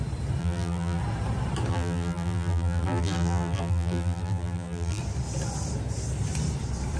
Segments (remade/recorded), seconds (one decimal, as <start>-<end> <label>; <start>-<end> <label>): 0.0-0.4 recorded; 0.4-1.0 remade; 1.0-1.7 recorded; 1.7-5.0 remade; 5.0-7.0 recorded